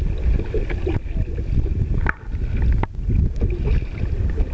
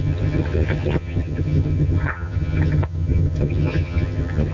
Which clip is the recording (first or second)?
first